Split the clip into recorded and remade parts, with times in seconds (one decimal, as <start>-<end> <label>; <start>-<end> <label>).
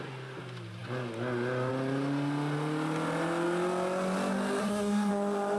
0.0-4.6 recorded; 4.6-5.1 remade; 5.1-5.6 recorded